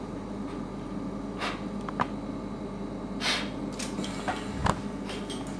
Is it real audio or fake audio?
real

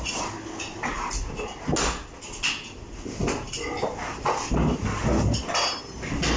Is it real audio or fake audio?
real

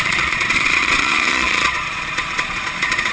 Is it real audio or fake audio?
fake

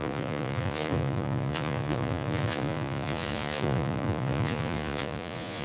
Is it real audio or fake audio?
fake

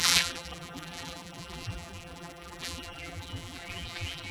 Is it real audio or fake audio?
fake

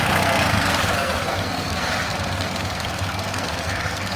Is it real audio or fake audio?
fake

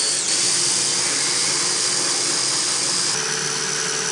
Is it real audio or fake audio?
real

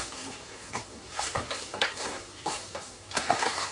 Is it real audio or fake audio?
fake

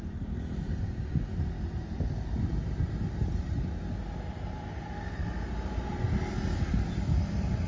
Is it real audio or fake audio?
real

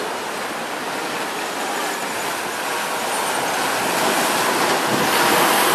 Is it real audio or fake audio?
real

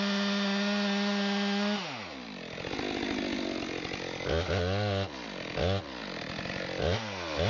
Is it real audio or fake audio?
real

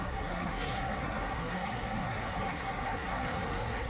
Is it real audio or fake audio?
fake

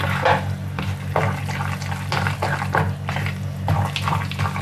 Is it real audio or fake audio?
real